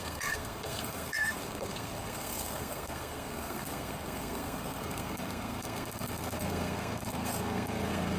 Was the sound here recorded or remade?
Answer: remade